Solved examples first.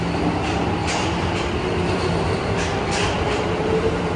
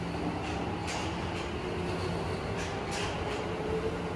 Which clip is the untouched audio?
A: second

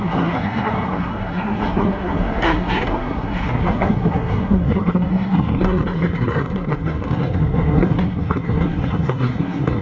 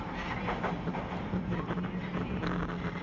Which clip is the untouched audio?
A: second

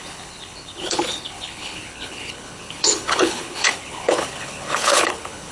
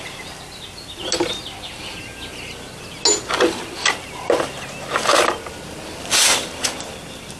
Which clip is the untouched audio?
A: second